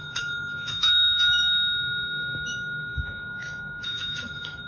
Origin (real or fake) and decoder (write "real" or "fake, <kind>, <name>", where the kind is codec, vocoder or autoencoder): fake, autoencoder, DAC-VAE